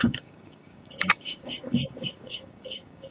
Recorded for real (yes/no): no